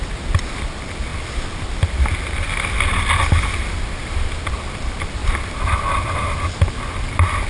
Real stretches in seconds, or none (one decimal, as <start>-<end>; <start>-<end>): 0.0-7.5